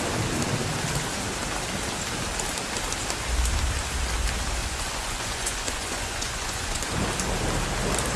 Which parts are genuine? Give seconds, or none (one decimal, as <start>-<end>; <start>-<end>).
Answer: 0.0-4.6; 7.0-8.2